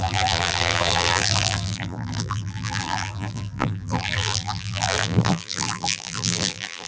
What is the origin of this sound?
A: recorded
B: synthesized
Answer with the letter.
B